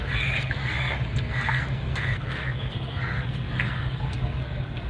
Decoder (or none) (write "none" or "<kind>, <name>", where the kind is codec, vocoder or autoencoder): codec, SNAC